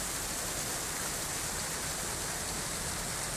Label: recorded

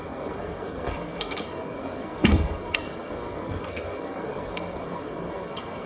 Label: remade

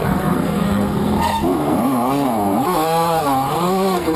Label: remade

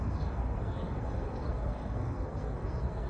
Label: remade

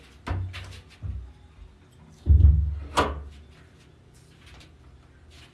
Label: recorded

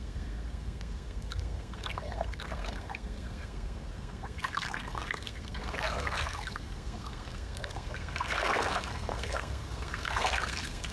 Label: remade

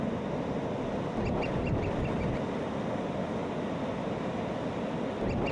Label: recorded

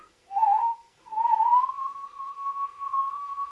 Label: remade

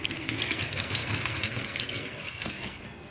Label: remade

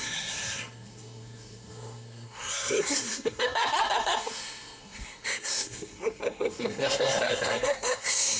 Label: remade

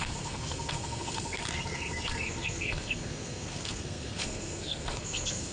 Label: remade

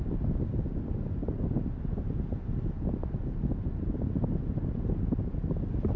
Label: recorded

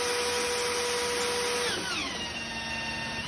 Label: recorded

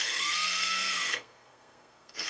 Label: remade